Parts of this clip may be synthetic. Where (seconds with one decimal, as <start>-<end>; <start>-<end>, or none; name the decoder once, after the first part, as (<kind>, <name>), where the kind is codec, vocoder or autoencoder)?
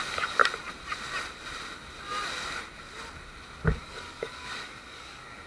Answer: 0.0-0.4 (codec, DAC); 3.7-5.5